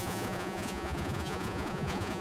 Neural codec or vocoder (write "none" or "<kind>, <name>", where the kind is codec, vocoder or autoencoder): vocoder, Vocos